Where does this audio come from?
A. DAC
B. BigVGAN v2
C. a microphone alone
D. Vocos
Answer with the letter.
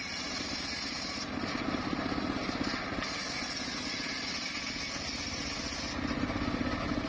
C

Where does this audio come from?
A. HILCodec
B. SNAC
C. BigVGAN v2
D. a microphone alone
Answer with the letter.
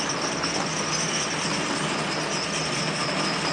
D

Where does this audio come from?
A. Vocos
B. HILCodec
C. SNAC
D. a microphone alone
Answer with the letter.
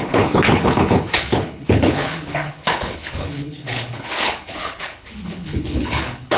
B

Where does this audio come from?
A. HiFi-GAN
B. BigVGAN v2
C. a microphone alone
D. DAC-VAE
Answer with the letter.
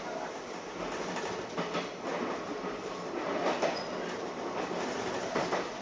C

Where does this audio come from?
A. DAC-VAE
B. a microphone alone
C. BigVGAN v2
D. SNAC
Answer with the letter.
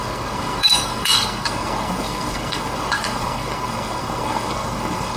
D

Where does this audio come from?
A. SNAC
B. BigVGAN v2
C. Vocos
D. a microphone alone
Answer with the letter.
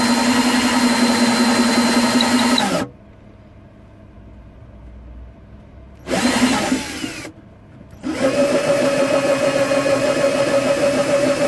D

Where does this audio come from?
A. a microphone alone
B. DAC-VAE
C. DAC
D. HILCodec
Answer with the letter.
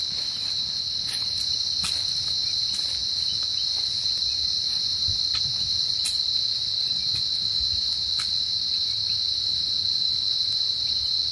A